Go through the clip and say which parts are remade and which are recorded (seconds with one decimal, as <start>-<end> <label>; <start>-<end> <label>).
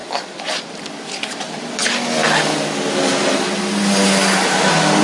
0.0-5.0 recorded